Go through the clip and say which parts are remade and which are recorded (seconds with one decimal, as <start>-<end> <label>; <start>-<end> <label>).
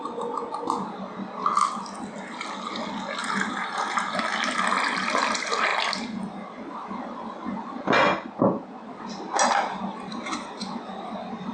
0.0-3.2 recorded; 3.2-4.2 remade; 4.2-11.5 recorded